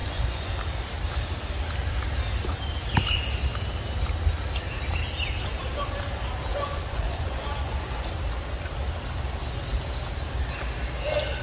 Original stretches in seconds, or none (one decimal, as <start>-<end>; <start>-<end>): 0.5-6.5; 8.1-11.4